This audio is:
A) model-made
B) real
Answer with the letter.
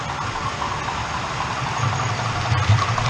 B